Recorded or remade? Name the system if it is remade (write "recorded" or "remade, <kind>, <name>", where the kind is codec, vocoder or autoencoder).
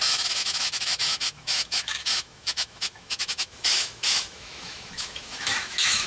remade, autoencoder, DAC-VAE